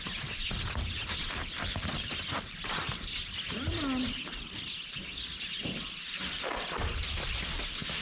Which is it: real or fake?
real